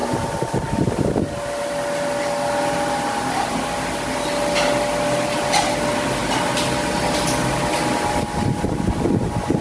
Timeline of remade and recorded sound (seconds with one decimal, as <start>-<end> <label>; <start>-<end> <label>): 0.0-9.6 recorded